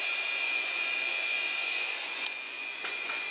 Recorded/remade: remade